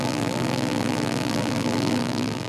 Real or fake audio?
fake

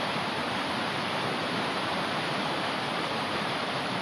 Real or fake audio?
fake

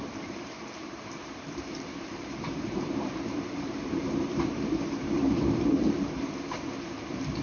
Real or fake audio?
fake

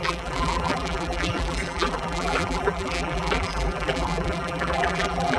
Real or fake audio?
fake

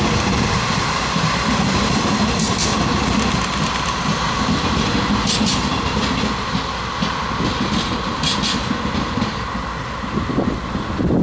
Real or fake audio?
real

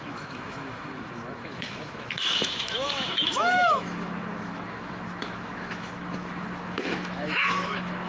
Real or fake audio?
fake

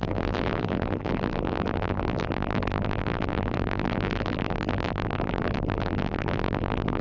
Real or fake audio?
fake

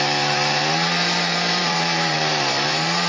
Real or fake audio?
fake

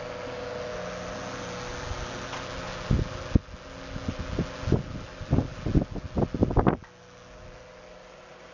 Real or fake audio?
real